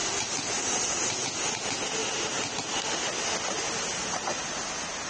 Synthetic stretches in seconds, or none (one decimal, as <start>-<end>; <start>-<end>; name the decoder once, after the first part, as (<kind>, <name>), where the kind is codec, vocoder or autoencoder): none